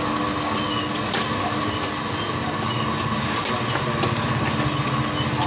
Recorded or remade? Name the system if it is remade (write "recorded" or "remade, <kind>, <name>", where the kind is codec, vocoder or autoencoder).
recorded